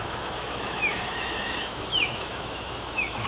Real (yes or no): no